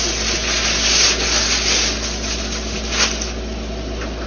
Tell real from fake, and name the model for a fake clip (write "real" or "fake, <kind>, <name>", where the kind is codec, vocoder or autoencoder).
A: real